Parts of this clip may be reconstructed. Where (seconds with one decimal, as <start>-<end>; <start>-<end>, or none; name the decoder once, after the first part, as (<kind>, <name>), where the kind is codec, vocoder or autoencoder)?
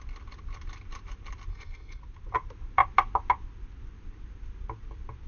1.5-2.0 (codec, SNAC)